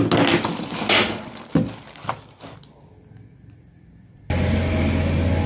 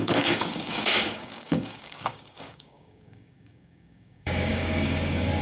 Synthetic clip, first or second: second